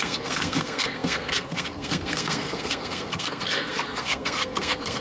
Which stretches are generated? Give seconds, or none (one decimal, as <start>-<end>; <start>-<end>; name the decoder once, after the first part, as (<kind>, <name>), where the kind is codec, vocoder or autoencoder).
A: 0.0-5.0 (codec, SNAC)